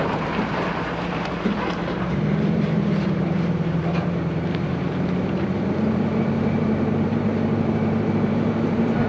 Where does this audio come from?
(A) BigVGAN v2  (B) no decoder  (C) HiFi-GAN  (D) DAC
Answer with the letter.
A